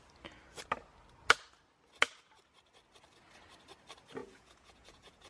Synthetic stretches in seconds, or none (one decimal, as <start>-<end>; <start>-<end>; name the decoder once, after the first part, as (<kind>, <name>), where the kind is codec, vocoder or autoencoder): 4.2-5.3 (vocoder, Vocos)